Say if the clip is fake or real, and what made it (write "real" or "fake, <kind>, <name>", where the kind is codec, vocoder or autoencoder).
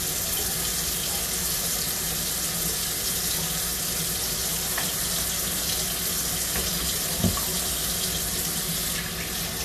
real